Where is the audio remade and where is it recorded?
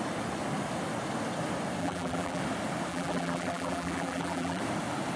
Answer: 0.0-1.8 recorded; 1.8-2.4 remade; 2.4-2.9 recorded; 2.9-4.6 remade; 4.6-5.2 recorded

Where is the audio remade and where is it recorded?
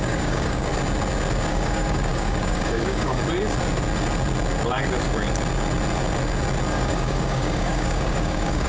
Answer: 0.0-0.7 remade; 0.7-1.5 recorded; 1.5-3.2 remade; 3.2-6.7 recorded; 6.7-8.7 remade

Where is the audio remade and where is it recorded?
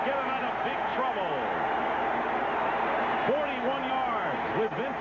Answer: 0.0-5.0 recorded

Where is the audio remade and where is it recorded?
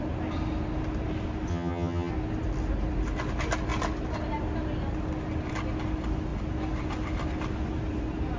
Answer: 0.0-1.5 recorded; 1.5-2.1 remade; 2.1-8.4 recorded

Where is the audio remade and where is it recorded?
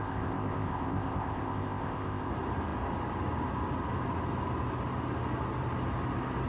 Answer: 0.0-2.3 remade; 2.3-6.5 recorded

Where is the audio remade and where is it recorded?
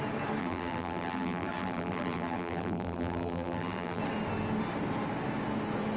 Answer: 0.0-0.4 recorded; 0.4-4.0 remade; 4.0-6.0 recorded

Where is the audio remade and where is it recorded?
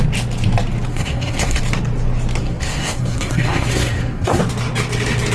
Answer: 0.0-0.9 recorded; 0.9-1.6 remade; 1.6-2.4 recorded; 2.4-4.4 remade; 4.4-5.3 recorded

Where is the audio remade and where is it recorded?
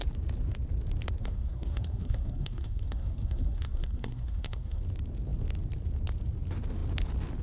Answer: 0.0-1.2 recorded; 1.2-4.8 remade; 4.8-7.4 recorded